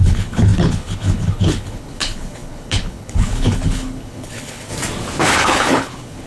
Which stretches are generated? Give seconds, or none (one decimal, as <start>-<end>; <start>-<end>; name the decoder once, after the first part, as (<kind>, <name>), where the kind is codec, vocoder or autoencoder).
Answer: 0.0-4.7 (codec, HILCodec); 5.2-6.3